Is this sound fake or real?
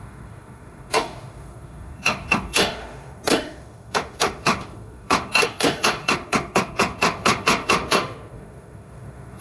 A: fake